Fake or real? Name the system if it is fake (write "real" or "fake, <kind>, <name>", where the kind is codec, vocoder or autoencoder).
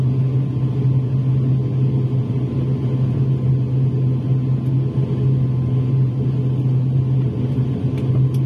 real